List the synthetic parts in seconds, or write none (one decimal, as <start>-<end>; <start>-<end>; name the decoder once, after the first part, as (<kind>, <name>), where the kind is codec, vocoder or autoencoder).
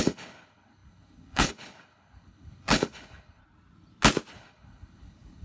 0.0-3.4 (codec, HILCodec); 4.3-5.4